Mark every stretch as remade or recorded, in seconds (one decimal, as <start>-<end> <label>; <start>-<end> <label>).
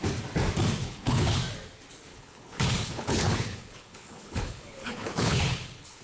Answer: 0.0-0.8 recorded; 0.8-1.4 remade; 1.4-2.1 recorded; 2.1-6.0 remade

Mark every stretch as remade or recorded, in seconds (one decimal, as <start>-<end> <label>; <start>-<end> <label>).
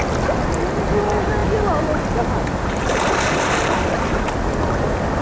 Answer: 0.0-1.4 recorded; 1.4-4.2 remade; 4.2-5.2 recorded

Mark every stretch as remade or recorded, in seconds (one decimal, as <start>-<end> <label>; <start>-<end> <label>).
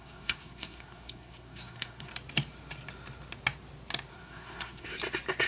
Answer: 0.0-2.1 remade; 2.1-4.1 recorded; 4.1-4.9 remade; 4.9-5.5 recorded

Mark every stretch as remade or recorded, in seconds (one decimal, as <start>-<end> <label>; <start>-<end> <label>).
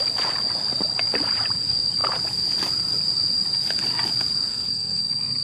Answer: 0.0-4.5 recorded; 4.5-5.0 remade; 5.0-5.4 recorded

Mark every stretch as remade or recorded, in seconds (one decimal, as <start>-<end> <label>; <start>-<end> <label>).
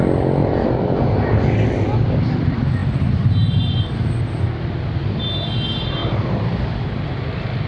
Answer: 0.0-0.4 recorded; 0.4-1.4 remade; 1.4-6.0 recorded; 6.0-7.3 remade; 7.3-7.7 recorded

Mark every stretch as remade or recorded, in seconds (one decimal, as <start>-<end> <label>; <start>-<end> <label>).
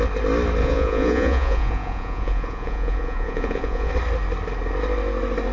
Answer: 0.0-0.6 recorded; 0.6-3.9 remade; 3.9-5.5 recorded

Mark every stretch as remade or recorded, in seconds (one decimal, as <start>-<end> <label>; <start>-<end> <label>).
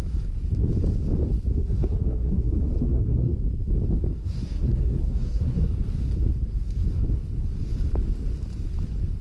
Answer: 0.0-1.5 recorded; 1.5-3.3 remade; 3.3-4.2 recorded; 4.2-5.7 remade; 5.7-9.2 recorded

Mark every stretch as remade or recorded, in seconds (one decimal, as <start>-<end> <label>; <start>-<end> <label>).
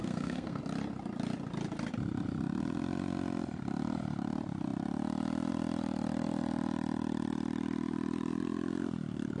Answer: 0.0-0.6 remade; 0.6-9.4 recorded